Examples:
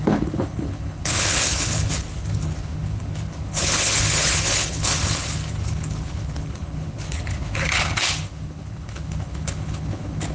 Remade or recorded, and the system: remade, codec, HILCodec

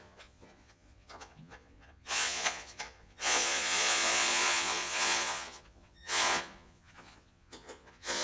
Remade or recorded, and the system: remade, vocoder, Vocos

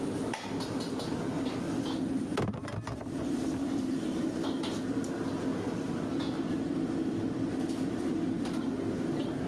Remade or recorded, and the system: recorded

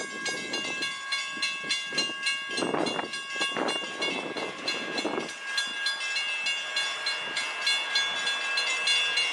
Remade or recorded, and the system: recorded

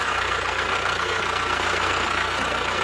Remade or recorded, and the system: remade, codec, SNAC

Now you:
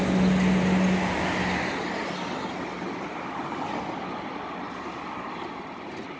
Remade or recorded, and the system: recorded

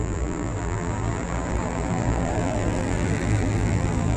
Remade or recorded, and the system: remade, vocoder, BigVGAN v2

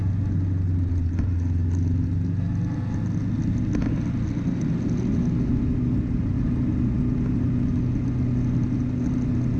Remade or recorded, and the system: recorded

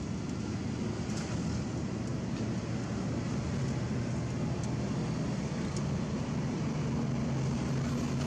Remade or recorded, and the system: recorded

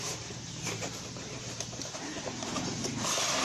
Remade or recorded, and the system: remade, vocoder, BigVGAN v2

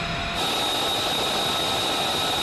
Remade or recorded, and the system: recorded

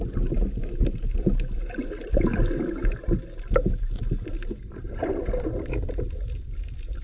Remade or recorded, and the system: recorded